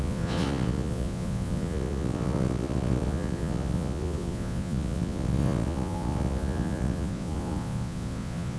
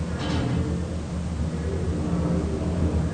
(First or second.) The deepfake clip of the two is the first